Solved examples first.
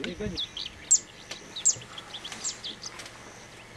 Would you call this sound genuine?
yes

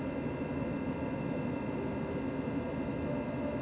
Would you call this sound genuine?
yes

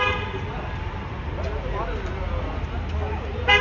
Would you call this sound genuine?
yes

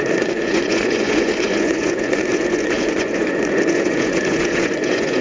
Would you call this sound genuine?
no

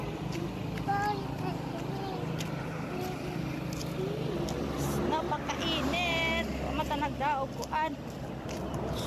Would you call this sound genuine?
yes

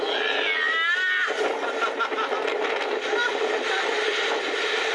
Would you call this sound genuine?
yes